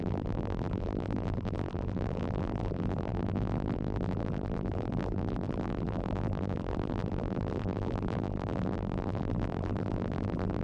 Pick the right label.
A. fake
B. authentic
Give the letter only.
A